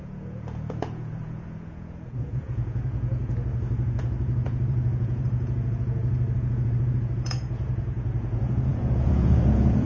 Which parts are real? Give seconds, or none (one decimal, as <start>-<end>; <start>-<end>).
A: none